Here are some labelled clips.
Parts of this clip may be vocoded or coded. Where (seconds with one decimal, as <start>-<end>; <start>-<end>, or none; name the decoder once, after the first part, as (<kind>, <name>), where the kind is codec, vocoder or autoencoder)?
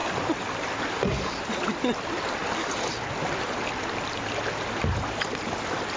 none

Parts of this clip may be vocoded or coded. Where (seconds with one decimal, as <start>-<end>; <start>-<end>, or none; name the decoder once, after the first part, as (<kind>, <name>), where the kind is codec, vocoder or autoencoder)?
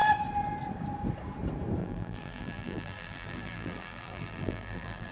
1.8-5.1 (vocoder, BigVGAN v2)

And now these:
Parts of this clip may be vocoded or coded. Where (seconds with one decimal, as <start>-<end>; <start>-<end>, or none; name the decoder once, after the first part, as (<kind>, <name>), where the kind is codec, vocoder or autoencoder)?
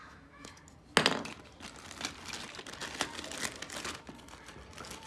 0.0-0.6 (autoencoder, DAC-VAE)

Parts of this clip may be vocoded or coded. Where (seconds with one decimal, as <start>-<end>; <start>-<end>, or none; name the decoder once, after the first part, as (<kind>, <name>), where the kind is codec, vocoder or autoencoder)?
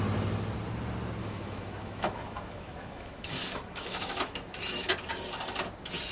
1.2-4.9 (autoencoder, DAC-VAE)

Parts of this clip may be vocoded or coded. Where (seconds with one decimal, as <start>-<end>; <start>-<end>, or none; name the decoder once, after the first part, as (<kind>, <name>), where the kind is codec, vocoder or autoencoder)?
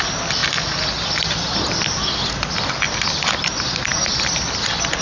none